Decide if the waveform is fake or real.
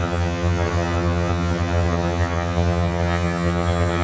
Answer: fake